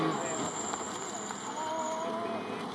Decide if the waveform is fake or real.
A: real